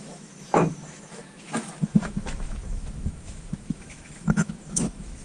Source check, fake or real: fake